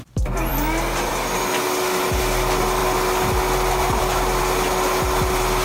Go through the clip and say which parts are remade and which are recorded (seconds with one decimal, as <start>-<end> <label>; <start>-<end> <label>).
0.0-5.6 recorded